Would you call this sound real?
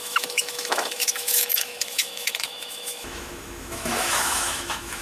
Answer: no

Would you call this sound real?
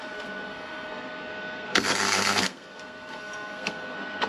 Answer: no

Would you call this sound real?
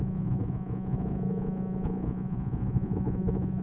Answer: no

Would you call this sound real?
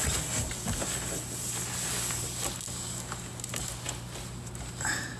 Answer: yes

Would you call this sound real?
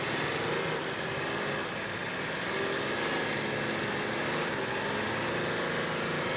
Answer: yes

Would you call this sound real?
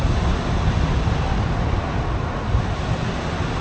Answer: yes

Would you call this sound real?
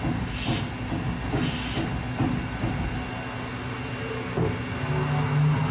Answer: yes